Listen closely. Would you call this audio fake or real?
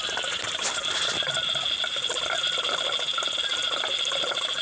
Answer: real